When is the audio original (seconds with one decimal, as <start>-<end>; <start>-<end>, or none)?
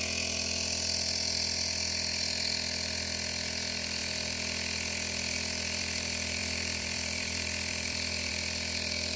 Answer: 0.0-6.4; 8.3-9.2